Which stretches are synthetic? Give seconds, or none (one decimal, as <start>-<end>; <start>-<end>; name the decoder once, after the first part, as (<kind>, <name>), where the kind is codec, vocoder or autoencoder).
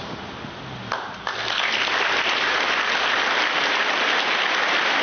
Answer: none